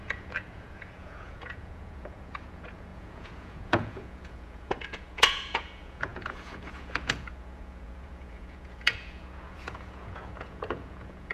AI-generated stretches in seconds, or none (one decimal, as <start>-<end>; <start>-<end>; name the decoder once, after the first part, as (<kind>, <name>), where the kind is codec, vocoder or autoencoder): 0.0-11.3 (vocoder, Vocos)

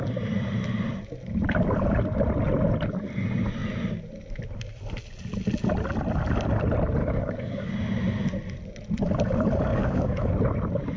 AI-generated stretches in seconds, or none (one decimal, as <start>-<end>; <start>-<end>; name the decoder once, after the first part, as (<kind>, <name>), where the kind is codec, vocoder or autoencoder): 7.0-7.7 (codec, DAC); 9.7-10.3